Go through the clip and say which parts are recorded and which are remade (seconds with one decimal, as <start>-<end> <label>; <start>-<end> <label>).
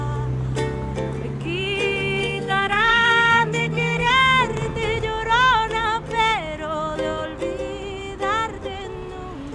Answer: 0.0-2.2 recorded; 2.2-4.1 remade; 4.1-9.5 recorded